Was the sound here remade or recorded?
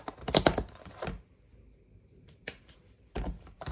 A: remade